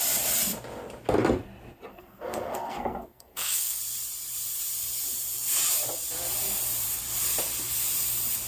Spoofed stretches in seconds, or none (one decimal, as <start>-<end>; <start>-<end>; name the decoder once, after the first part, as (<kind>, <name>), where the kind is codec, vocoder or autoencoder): 1.9-3.8 (codec, SNAC)